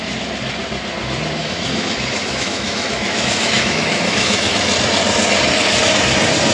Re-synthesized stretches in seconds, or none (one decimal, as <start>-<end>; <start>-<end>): 1.4-4.7